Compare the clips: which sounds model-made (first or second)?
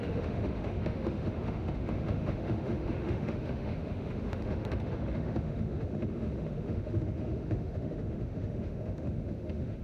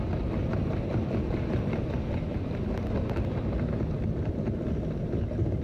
first